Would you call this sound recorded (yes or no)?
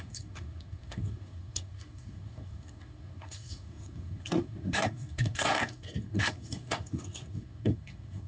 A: no